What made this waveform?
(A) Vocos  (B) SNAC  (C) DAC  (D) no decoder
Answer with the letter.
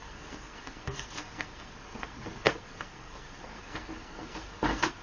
B